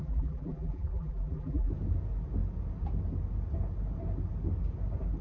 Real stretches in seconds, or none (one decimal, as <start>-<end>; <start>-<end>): 1.7-5.2